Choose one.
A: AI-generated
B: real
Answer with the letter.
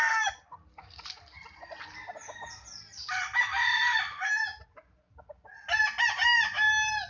B